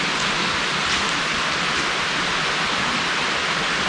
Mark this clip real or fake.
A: real